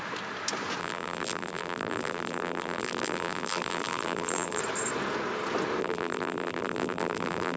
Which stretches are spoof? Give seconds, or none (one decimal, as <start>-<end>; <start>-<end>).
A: 0.8-4.6; 5.8-7.6